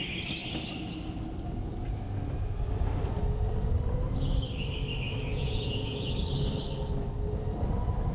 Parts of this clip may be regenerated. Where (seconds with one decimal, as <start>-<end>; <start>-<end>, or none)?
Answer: 5.3-6.1